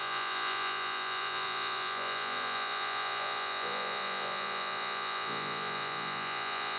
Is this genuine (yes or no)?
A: no